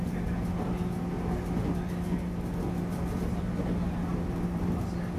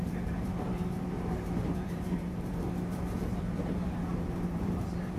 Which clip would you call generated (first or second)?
second